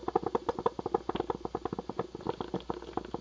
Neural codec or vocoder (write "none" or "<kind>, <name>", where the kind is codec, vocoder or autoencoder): none